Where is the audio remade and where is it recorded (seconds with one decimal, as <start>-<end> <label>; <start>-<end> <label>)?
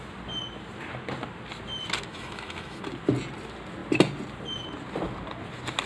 0.0-2.1 recorded; 2.1-2.8 remade; 2.8-5.9 recorded